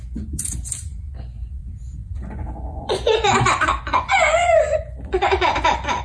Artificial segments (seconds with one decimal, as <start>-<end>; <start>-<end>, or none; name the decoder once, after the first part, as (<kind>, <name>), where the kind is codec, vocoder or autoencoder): 0.0-6.0 (vocoder, Vocos)